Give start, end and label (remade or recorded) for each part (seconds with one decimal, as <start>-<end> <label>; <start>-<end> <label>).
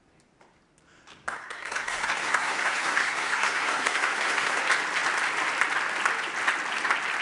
0.0-1.3 recorded; 1.3-4.6 remade; 4.6-7.2 recorded